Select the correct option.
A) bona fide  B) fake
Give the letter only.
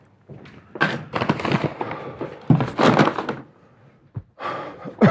A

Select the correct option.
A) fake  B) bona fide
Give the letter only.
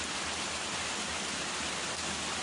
B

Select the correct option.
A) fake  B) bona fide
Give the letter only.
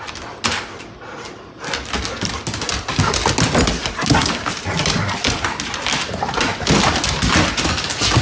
B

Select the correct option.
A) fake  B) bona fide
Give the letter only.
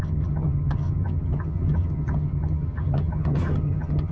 A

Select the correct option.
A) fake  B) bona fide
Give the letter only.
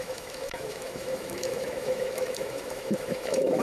A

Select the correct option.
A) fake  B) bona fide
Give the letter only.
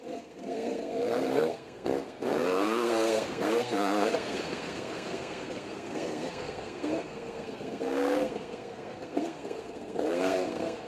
A